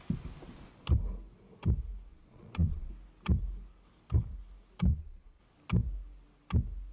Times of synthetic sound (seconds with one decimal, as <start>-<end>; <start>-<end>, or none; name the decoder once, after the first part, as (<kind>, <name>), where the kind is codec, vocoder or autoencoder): 2.1-2.9 (vocoder, Vocos); 4.9-5.4